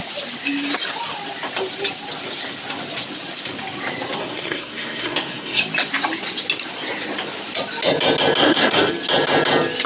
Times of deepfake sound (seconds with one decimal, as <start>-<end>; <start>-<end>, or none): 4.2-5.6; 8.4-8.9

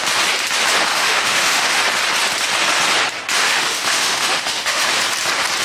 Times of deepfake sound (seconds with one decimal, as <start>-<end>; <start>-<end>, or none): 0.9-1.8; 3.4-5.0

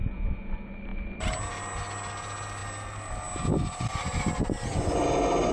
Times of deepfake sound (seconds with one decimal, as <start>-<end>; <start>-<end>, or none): none

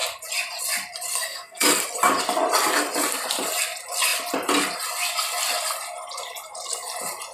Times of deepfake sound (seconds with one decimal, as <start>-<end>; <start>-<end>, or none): 1.1-1.8